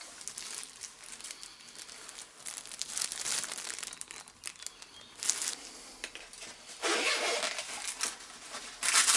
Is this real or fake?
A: real